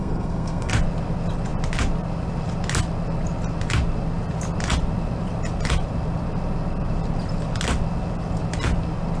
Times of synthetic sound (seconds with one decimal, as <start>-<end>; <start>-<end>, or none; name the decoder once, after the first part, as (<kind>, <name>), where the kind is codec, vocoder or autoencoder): 0.0-0.7 (codec, SNAC)